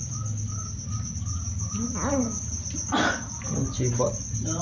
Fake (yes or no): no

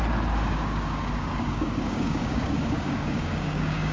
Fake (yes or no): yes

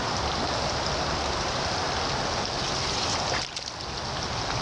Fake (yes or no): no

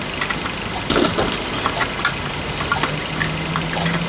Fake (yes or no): no